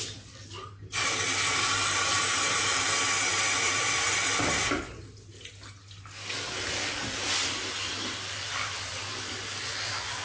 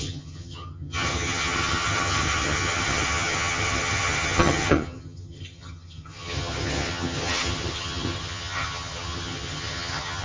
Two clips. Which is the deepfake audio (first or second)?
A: second